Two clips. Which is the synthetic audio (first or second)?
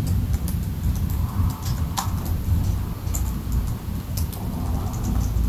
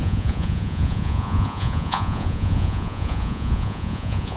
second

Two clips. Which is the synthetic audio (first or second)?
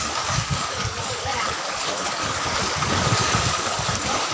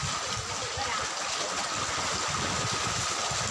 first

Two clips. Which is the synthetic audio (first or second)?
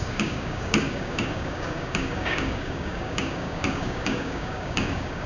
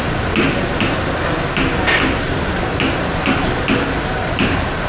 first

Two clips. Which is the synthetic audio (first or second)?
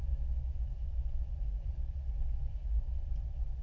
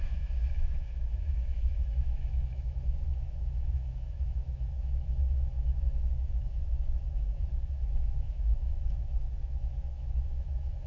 second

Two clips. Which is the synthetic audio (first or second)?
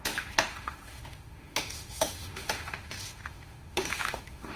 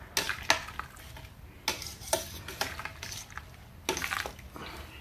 first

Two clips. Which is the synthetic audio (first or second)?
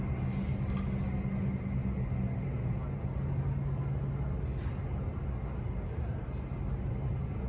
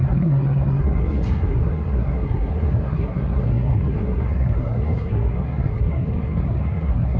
second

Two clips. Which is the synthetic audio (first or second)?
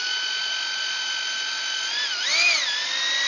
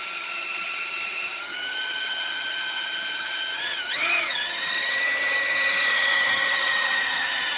second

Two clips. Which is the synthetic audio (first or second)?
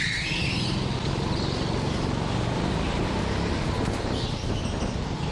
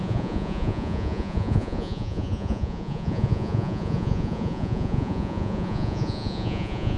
second